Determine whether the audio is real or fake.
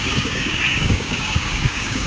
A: fake